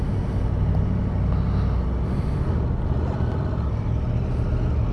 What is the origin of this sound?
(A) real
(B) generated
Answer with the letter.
A